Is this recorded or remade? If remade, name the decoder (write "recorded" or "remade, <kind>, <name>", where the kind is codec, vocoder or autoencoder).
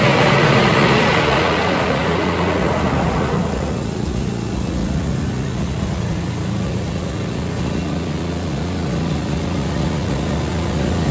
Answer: remade, vocoder, Vocos